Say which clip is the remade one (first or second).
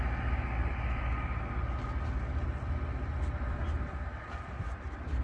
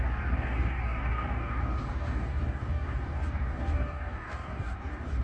second